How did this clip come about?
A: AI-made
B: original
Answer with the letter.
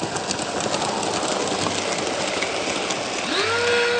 B